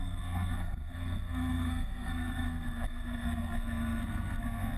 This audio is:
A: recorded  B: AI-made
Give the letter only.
B